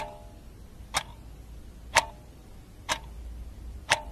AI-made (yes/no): no